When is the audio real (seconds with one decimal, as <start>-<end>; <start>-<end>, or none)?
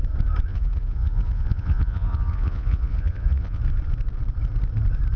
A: 0.0-0.5; 3.6-5.2